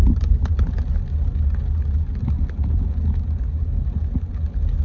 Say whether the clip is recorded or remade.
recorded